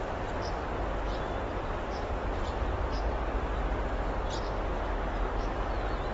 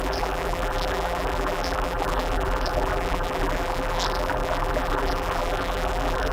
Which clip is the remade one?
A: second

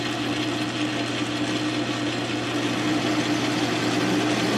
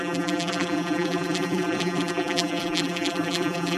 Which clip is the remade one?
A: second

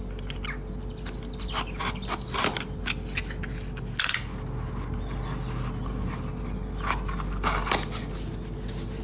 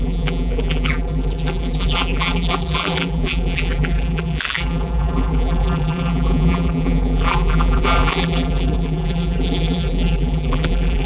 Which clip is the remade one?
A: second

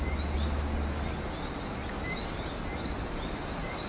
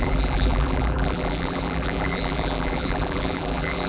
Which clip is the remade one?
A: second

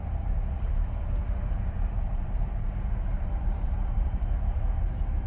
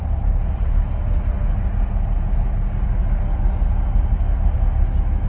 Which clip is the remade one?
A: first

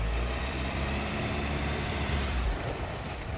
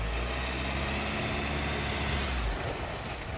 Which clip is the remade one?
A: first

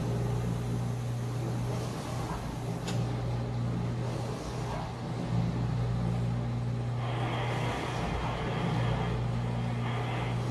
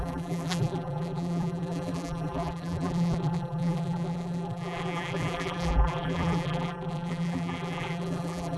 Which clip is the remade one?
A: second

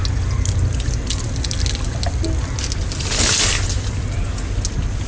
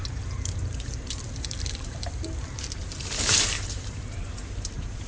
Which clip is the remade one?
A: second